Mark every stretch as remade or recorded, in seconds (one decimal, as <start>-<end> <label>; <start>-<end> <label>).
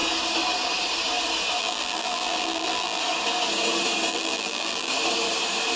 0.0-1.6 recorded; 1.6-3.0 remade; 3.0-4.1 recorded; 4.1-4.9 remade; 4.9-5.8 recorded